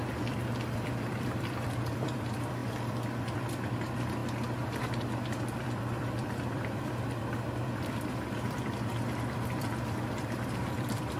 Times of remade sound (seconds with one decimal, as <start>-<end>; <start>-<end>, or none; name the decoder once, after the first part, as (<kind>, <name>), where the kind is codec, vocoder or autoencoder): 0.0-4.2 (vocoder, BigVGAN v2); 4.9-11.2